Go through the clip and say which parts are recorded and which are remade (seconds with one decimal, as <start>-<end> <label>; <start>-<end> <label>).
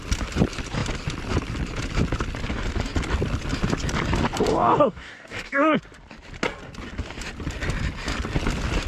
0.0-4.5 recorded; 4.5-5.8 remade; 5.8-8.9 recorded